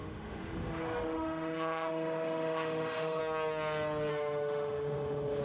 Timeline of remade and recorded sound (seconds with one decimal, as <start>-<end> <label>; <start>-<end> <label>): 0.0-3.2 remade; 3.2-4.1 recorded; 4.1-5.4 remade

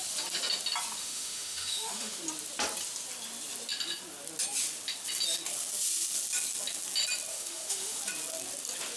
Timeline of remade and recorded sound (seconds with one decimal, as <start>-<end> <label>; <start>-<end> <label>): 0.0-1.0 recorded; 1.0-2.2 remade; 2.2-7.3 recorded; 7.3-8.0 remade; 8.0-9.0 recorded